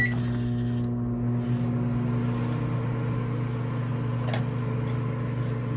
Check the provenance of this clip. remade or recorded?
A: recorded